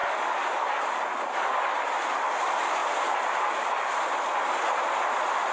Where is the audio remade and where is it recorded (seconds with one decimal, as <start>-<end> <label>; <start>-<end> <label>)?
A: 0.0-2.8 recorded; 2.8-3.5 remade; 3.5-5.5 recorded